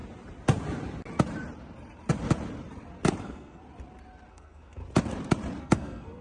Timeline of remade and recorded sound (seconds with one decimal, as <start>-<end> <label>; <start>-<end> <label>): 0.0-3.2 recorded; 3.2-3.6 remade; 3.6-4.3 recorded; 4.3-4.8 remade; 4.8-5.6 recorded; 5.6-6.2 remade